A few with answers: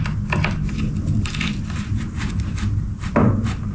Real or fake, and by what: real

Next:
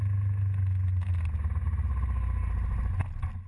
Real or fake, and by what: real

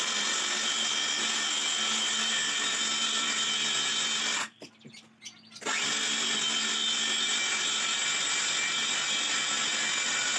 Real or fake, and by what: real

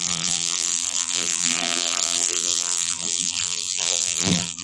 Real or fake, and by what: fake, vocoder, BigVGAN v2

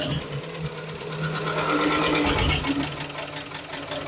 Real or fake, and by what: real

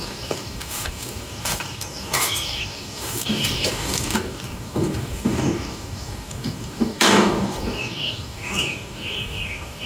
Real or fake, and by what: fake, codec, DAC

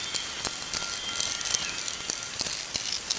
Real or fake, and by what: real